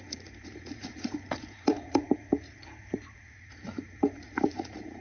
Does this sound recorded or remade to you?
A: remade